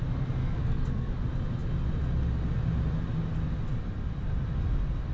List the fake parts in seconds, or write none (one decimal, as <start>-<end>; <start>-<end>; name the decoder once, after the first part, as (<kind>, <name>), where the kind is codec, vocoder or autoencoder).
0.4-1.1 (codec, SNAC)